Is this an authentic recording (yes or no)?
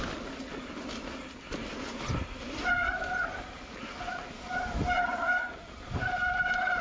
yes